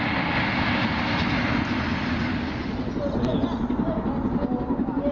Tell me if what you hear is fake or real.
real